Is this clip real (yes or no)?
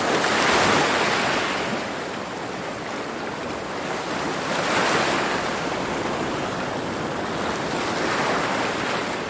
yes